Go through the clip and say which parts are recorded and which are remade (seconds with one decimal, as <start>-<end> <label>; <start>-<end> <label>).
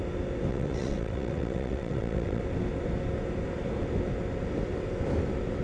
0.0-0.5 recorded; 0.5-2.4 remade; 2.4-5.6 recorded